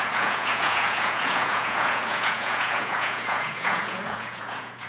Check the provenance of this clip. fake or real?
fake